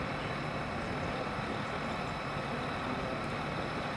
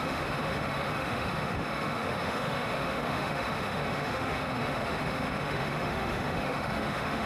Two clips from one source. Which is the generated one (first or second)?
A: second